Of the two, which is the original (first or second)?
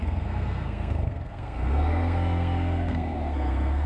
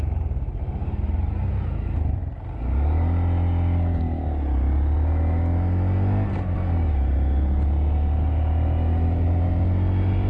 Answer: second